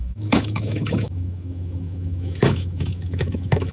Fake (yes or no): yes